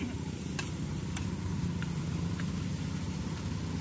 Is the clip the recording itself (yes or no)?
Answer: yes